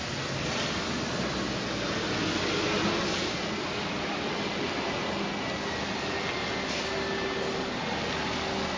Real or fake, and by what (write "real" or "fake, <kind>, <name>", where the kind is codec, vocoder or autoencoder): real